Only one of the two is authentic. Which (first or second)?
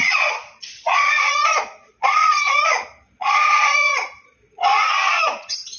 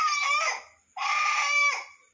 second